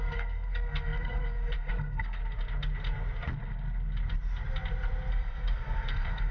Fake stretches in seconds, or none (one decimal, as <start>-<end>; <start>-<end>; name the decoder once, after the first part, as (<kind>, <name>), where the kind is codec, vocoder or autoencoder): 0.0-2.2 (codec, SNAC); 5.1-6.3